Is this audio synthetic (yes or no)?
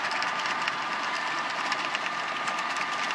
no